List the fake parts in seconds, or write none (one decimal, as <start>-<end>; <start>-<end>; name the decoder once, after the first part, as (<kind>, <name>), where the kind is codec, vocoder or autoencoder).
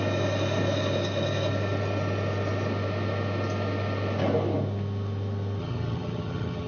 5.6-6.7 (vocoder, HiFi-GAN)